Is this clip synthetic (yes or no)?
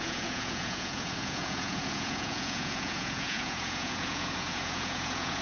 yes